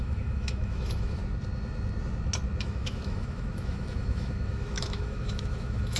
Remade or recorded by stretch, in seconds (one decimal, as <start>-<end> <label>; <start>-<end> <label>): 0.0-1.2 remade; 1.2-2.6 recorded; 2.6-6.0 remade